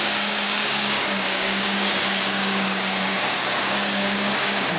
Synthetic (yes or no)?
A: yes